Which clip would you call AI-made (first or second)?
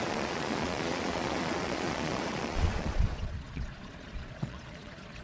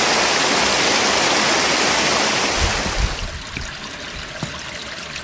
first